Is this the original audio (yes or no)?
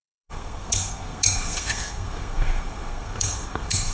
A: no